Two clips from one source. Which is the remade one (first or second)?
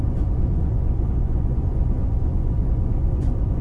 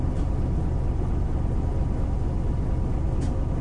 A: first